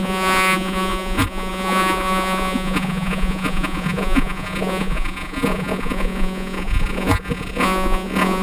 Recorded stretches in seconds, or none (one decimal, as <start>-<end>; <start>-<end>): none